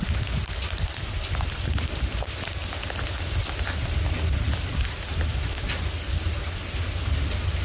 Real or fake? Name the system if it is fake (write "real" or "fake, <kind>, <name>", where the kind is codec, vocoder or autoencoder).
real